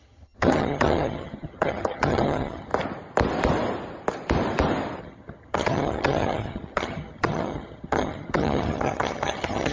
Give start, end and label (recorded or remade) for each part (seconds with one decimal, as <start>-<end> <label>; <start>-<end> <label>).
0.0-2.7 remade; 2.7-5.0 recorded; 5.0-9.7 remade